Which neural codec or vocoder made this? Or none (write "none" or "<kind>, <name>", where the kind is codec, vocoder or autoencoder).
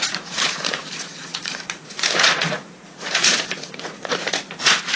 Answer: vocoder, Vocos